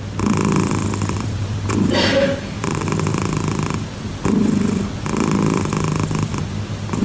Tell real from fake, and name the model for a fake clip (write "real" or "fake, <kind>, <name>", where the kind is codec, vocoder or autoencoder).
fake, vocoder, BigVGAN v2